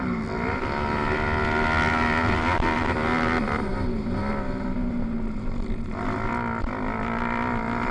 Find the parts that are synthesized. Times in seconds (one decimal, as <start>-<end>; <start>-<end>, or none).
none